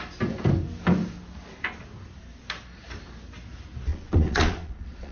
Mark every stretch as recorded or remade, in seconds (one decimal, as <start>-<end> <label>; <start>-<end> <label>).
0.0-3.9 recorded; 3.9-5.1 remade

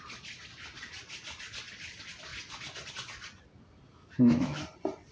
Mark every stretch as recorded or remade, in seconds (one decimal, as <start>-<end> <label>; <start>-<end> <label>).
0.0-3.9 recorded; 3.9-4.6 remade; 4.6-5.1 recorded

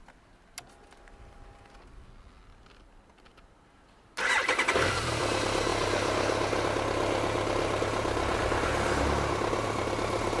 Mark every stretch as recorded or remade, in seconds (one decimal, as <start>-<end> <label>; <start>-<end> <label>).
0.0-10.4 recorded

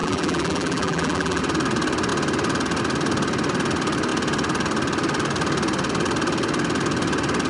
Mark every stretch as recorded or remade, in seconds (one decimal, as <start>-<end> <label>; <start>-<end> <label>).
0.0-1.4 remade; 1.4-7.5 recorded

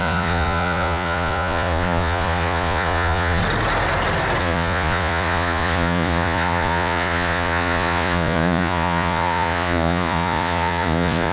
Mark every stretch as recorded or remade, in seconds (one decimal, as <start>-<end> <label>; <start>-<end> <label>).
0.0-3.4 remade; 3.4-4.4 recorded; 4.4-11.3 remade

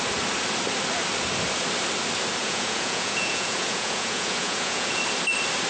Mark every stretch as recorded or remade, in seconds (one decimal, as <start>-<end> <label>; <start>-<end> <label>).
0.0-2.4 recorded; 2.4-5.0 remade; 5.0-5.7 recorded

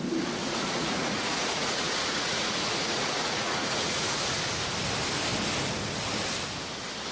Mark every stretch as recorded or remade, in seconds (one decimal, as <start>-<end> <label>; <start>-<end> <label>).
0.0-0.4 recorded; 0.4-4.4 remade; 4.4-7.1 recorded